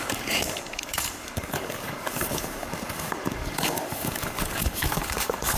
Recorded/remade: remade